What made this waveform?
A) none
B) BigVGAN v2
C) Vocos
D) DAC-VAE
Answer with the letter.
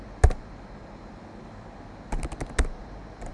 A